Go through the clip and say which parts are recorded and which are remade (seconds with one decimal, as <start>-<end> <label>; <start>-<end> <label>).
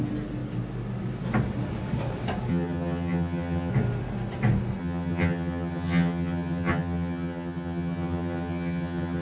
0.0-2.5 recorded; 2.5-3.7 remade; 3.7-4.8 recorded; 4.8-9.2 remade